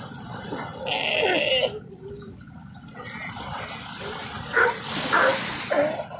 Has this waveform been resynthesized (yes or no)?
no